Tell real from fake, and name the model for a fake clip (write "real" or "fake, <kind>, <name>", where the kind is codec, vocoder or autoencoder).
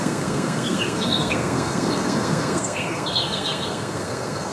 fake, codec, SNAC